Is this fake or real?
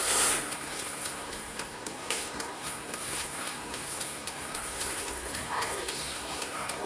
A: fake